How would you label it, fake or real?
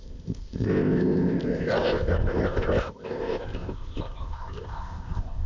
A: fake